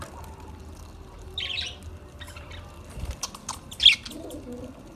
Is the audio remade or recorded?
recorded